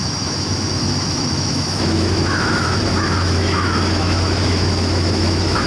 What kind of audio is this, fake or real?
fake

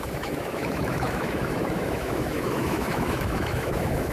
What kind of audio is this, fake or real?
fake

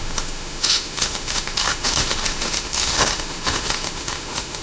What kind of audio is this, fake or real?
fake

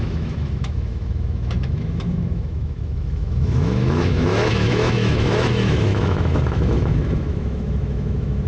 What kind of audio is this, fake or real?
fake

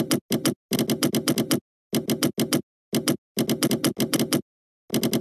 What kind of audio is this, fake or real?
real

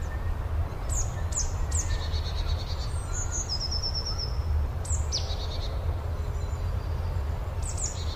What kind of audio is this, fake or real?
real